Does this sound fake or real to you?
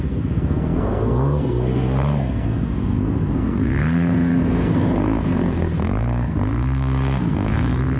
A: fake